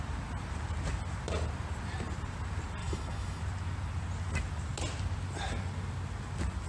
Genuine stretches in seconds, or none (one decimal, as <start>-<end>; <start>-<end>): 0.0-2.8; 3.4-6.7